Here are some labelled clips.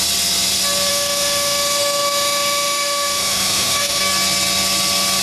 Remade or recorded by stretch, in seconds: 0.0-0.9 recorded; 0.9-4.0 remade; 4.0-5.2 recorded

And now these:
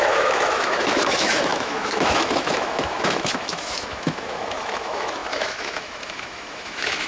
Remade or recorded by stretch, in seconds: 0.0-7.1 remade